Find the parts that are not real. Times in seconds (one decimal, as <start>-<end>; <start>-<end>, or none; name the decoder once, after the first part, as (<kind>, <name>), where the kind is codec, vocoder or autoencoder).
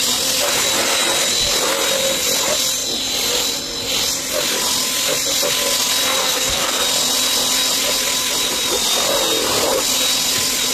6.2-6.8 (codec, SNAC)